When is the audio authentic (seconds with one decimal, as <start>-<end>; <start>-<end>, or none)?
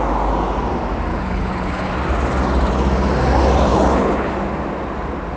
0.0-1.1; 1.9-3.7; 4.3-5.4